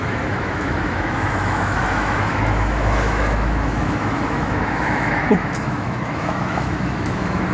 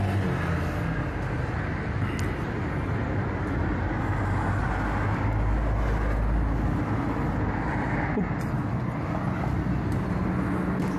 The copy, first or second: first